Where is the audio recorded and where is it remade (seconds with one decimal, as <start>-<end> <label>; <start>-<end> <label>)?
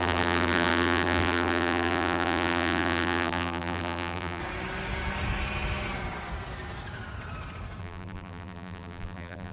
0.0-4.4 remade; 4.4-7.8 recorded; 7.8-9.5 remade